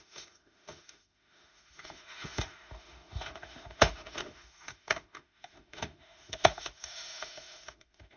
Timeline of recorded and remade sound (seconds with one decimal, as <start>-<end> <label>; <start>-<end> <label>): 0.0-8.2 remade